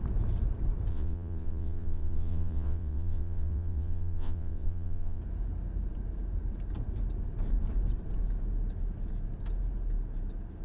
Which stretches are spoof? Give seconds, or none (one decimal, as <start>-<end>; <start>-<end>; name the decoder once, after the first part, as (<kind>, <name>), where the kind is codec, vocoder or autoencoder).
0.9-5.2 (vocoder, WaveNeXt)